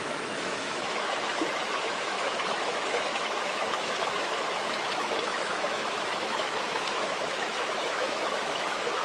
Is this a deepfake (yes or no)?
yes